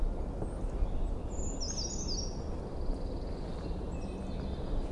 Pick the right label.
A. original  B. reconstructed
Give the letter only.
A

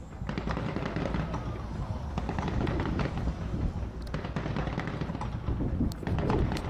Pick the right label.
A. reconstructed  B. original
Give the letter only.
B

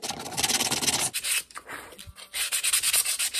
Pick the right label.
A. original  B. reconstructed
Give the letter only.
A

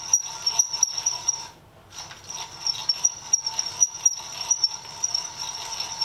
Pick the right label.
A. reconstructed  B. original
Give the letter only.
B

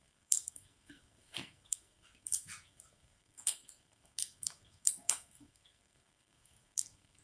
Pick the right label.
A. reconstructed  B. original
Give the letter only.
A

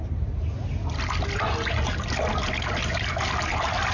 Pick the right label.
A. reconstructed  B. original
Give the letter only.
B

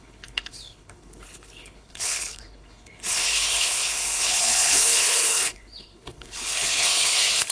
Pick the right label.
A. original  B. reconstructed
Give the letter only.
B